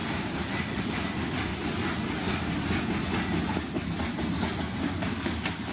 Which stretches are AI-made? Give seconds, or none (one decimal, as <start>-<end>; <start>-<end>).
0.6-1.5; 4.6-5.7